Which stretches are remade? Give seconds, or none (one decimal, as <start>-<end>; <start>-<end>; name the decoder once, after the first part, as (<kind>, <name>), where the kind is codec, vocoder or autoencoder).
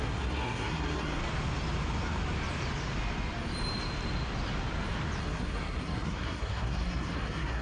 0.0-1.2 (codec, SNAC); 5.2-7.6